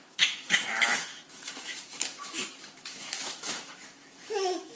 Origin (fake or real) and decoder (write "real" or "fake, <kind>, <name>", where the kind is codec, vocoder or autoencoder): fake, autoencoder, DAC-VAE